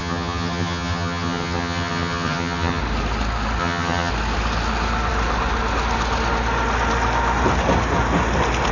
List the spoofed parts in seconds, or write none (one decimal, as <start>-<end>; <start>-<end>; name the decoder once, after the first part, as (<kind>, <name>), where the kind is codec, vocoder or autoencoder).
0.0-2.8 (vocoder, HiFi-GAN); 3.6-4.1